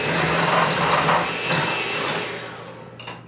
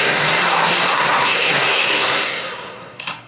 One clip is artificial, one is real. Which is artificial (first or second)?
second